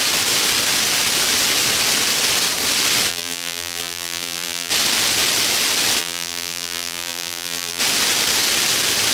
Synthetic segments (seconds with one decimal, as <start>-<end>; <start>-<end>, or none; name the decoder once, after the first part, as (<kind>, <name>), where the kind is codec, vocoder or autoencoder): 3.1-4.7 (vocoder, BigVGAN v2); 6.0-7.8